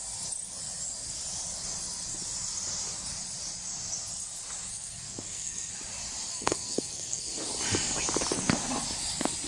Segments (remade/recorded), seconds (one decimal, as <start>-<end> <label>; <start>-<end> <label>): 0.0-4.7 recorded; 4.7-5.7 remade; 5.7-6.3 recorded; 6.3-7.4 remade; 7.4-9.5 recorded